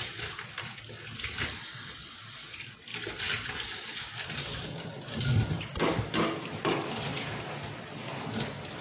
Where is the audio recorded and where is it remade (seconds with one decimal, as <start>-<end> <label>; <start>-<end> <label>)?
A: 0.0-8.8 recorded